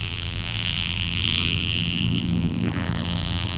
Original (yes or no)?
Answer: no